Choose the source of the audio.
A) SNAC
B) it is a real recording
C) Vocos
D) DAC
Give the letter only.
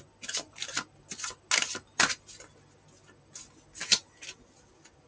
B